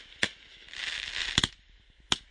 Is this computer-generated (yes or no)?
no